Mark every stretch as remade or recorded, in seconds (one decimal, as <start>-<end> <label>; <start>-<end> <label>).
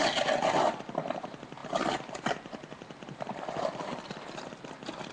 0.0-5.1 recorded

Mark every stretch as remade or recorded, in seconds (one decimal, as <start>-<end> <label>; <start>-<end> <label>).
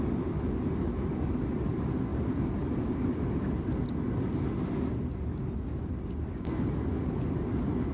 0.0-2.1 recorded; 2.1-3.9 remade; 3.9-5.8 recorded; 5.8-7.0 remade; 7.0-7.9 recorded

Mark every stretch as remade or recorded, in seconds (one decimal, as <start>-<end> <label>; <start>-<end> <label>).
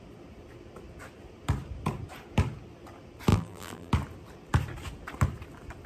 0.0-3.3 recorded; 3.3-3.9 remade; 3.9-5.9 recorded